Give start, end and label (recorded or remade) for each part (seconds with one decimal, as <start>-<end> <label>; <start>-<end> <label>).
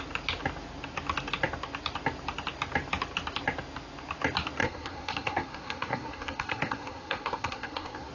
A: 0.0-4.6 recorded; 4.6-8.1 remade